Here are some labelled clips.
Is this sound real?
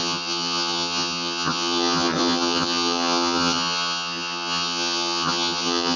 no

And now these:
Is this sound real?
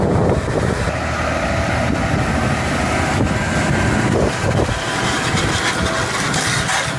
yes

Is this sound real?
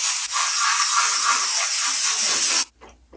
yes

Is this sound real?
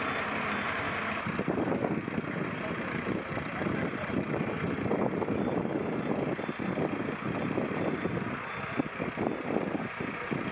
yes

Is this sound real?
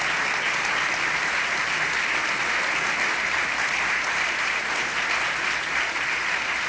yes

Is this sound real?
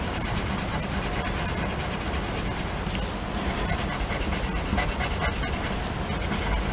yes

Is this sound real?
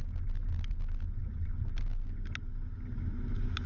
yes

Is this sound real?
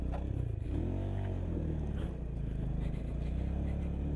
yes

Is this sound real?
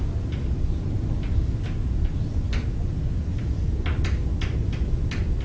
yes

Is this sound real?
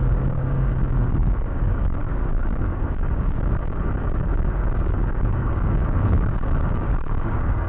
no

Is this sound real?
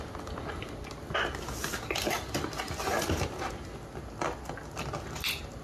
yes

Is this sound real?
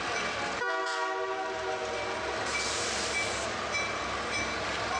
yes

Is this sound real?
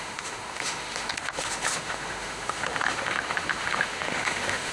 no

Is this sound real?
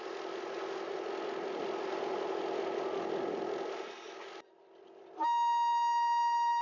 yes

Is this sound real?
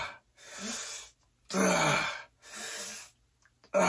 yes